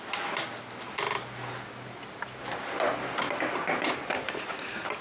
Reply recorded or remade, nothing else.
recorded